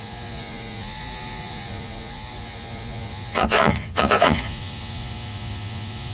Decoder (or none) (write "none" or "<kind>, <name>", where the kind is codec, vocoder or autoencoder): vocoder, Vocos